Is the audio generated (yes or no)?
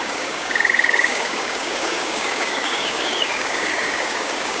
yes